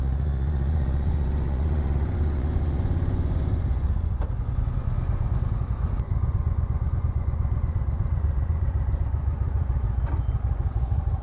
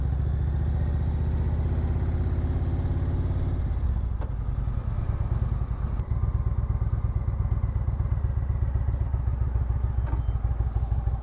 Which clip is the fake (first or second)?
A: first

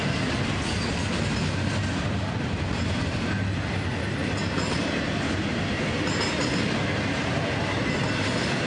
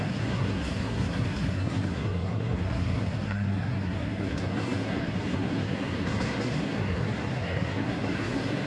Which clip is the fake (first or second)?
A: second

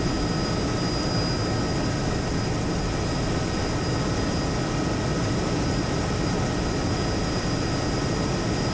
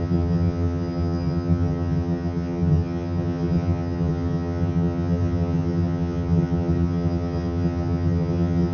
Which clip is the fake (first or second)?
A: second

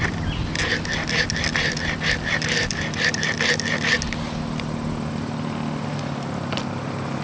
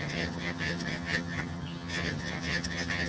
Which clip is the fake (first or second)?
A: second